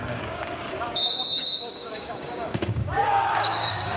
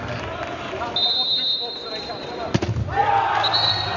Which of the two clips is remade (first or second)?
first